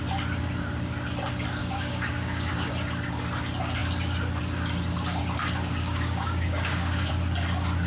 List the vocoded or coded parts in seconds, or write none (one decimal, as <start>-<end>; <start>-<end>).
1.6-2.7; 5.7-7.1